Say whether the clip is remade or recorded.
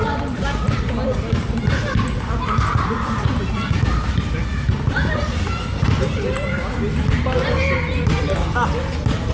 recorded